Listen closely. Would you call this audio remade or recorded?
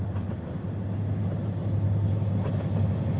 recorded